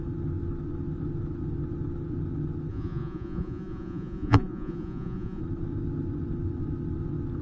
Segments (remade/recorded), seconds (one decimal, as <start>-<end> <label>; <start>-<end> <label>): 0.0-2.7 recorded; 2.7-5.4 remade; 5.4-7.4 recorded